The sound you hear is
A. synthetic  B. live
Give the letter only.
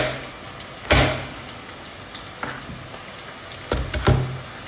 B